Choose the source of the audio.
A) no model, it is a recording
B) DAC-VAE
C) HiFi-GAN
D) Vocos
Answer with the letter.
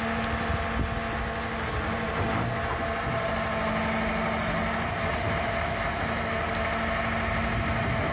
A